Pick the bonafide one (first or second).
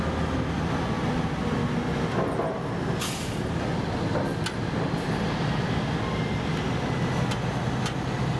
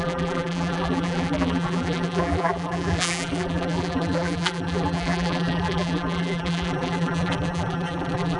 first